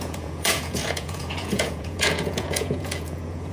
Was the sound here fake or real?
fake